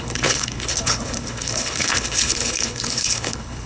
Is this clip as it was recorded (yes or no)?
no